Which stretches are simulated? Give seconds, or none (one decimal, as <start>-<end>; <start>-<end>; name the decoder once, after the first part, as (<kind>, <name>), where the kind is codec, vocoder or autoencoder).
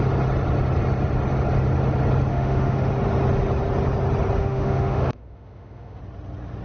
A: 2.3-2.9 (autoencoder, DAC-VAE); 4.4-6.0